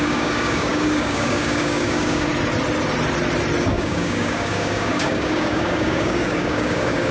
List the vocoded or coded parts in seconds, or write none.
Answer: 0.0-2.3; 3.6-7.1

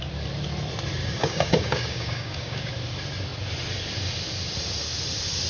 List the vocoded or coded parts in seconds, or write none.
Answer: 1.0-2.7

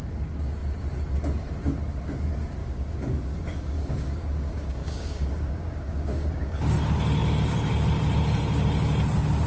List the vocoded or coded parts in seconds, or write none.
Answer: 2.6-6.6

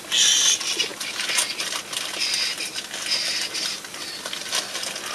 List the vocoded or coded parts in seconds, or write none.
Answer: none

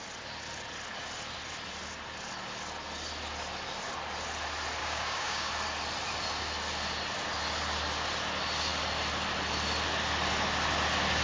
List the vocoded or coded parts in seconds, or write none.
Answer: 4.8-5.5